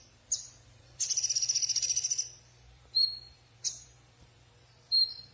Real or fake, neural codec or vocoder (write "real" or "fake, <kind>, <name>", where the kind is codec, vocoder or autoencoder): fake, vocoder, BigVGAN v2